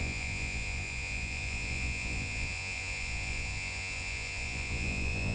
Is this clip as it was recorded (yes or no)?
no